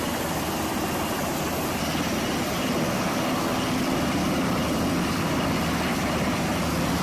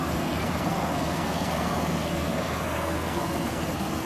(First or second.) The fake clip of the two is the second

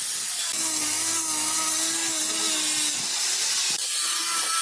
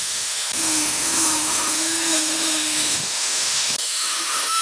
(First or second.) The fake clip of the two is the second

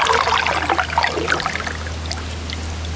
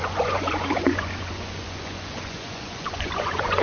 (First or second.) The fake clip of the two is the second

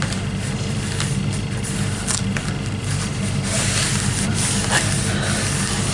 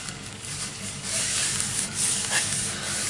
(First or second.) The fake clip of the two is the second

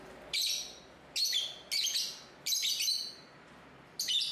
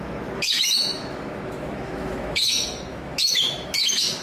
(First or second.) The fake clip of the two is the second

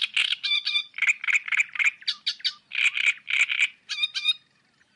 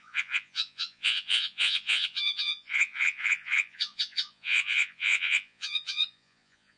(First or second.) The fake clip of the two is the second